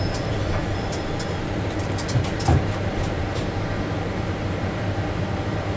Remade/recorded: remade